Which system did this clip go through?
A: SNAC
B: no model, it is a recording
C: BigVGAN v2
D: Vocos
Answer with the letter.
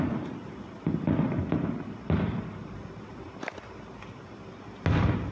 B